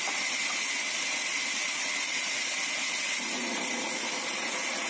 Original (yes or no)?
yes